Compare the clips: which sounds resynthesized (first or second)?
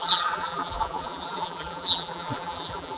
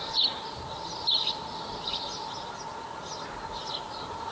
first